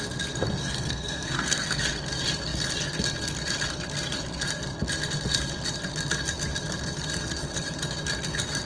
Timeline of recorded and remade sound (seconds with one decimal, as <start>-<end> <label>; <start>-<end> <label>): 0.0-0.6 recorded; 0.6-1.8 remade; 1.8-8.6 recorded